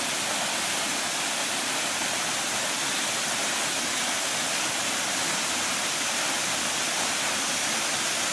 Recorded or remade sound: recorded